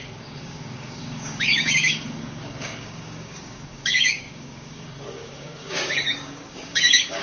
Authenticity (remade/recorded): remade